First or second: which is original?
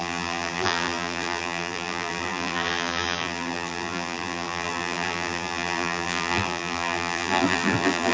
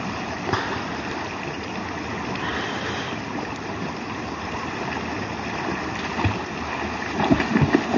second